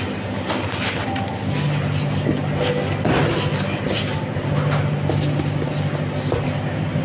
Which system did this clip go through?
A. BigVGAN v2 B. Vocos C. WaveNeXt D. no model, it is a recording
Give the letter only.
D